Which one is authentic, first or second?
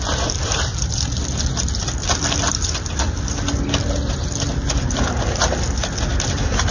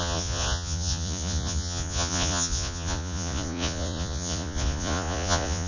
first